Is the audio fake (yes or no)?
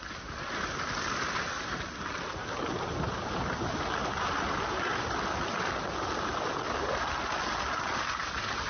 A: no